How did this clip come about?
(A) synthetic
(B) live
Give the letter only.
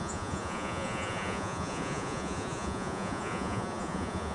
A